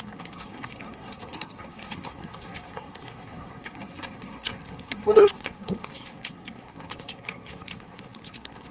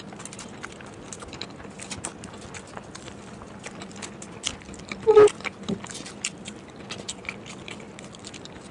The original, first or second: second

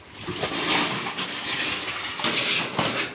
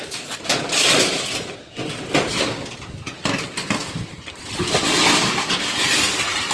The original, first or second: first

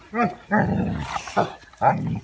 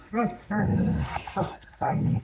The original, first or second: first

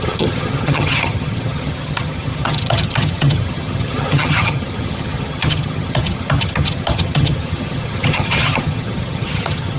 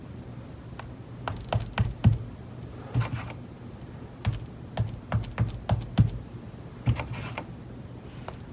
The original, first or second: second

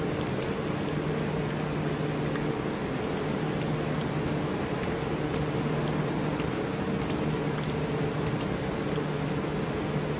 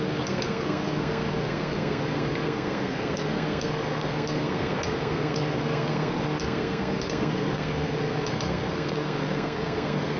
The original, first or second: first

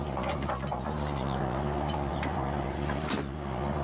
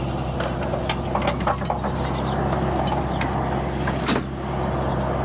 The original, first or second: second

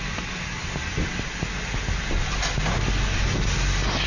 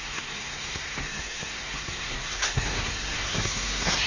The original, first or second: first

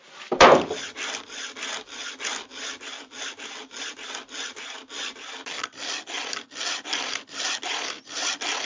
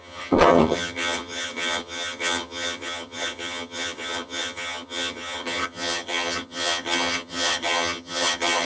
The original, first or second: first